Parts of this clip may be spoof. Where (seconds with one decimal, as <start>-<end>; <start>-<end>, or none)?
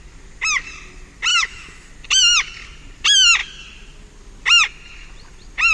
1.3-1.9